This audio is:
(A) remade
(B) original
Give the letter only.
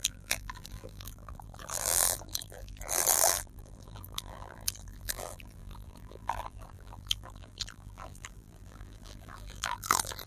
A